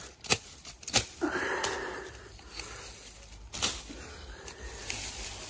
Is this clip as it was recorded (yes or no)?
yes